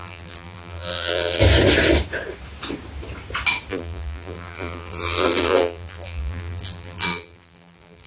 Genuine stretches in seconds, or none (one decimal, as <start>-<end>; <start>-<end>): 1.4-3.7